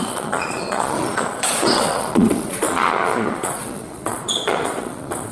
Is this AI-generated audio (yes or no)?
yes